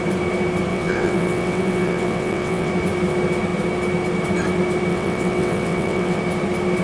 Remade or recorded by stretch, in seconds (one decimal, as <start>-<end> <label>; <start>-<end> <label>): 0.0-0.7 recorded; 0.7-2.7 remade; 2.7-4.9 recorded; 4.9-6.2 remade; 6.2-6.8 recorded